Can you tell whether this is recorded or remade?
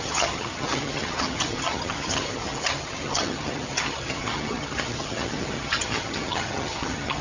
remade